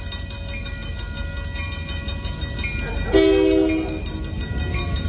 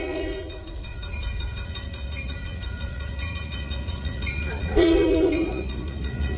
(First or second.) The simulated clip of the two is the second